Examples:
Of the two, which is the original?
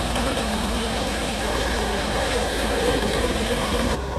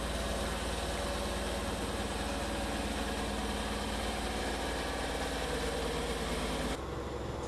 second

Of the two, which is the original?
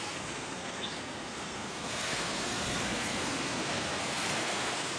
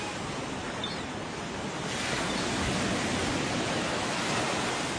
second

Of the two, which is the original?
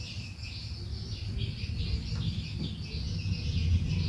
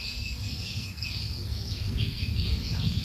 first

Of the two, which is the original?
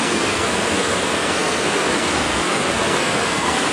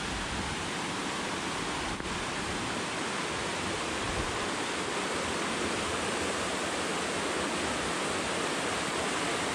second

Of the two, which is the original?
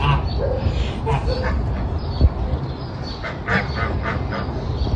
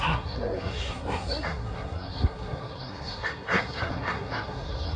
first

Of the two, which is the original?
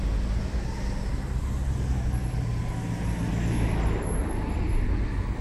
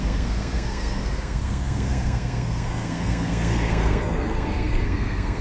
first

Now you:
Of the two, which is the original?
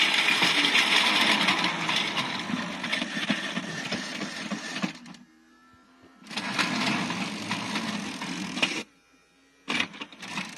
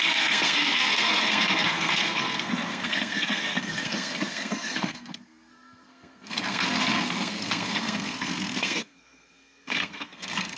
first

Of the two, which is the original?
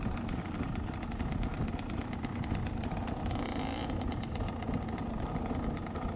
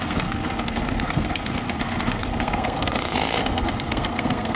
first